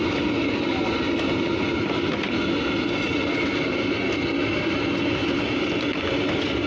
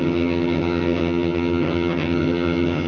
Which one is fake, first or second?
second